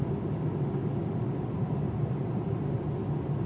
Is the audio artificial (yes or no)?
no